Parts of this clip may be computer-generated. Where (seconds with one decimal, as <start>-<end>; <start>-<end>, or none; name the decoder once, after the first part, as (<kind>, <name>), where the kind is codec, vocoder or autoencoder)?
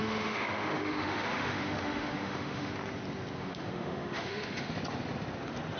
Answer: 0.0-2.7 (autoencoder, DAC-VAE); 3.4-4.7